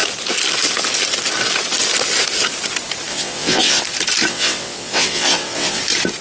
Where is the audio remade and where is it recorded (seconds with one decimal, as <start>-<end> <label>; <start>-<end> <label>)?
0.0-3.1 recorded; 3.1-3.8 remade; 3.8-4.3 recorded; 4.3-5.8 remade; 5.8-6.2 recorded